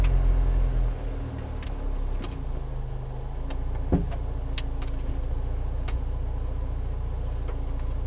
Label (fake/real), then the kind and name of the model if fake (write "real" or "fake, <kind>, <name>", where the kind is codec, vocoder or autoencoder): real